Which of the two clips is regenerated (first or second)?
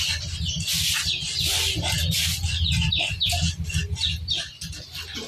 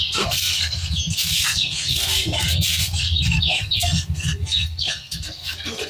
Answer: second